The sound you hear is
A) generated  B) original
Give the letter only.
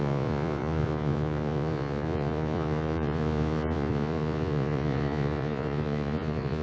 A